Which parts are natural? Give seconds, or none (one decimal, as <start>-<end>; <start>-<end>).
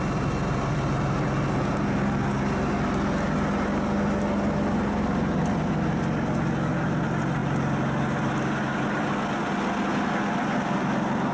0.0-11.3